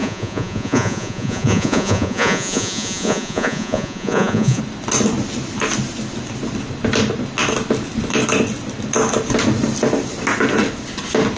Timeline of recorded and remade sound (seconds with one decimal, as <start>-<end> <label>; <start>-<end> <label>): 0.0-4.6 remade; 4.6-11.4 recorded